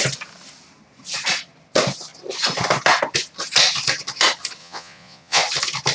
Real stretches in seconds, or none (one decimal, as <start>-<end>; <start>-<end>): 0.0-4.6; 5.4-5.9